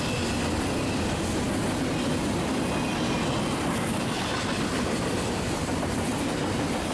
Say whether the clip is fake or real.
real